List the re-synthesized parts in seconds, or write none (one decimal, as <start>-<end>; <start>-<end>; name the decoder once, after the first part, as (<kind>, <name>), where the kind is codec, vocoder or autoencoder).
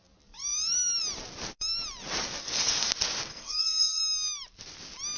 2.4-2.9 (codec, SNAC); 3.3-4.0